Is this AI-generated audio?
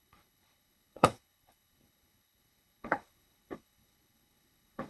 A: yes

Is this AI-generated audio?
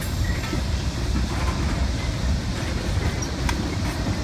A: yes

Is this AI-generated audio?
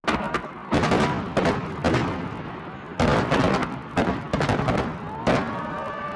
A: no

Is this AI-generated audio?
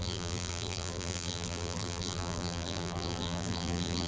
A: yes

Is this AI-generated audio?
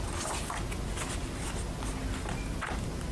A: no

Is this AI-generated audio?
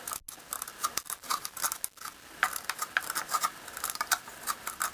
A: no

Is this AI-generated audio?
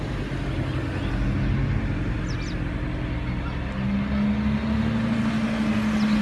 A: no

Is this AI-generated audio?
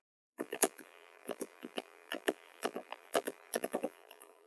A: yes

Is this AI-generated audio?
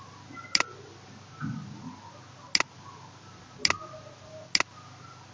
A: no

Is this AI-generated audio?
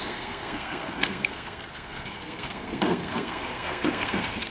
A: yes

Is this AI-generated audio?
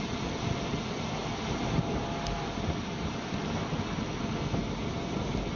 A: no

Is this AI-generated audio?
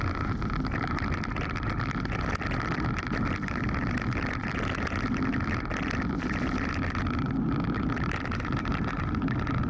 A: no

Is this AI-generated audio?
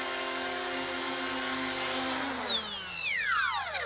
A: no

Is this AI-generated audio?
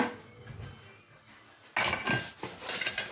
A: no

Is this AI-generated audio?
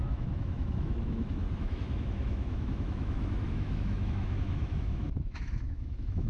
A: yes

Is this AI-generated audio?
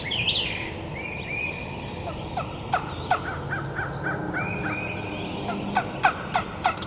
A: no